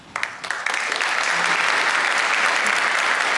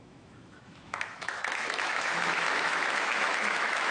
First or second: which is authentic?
first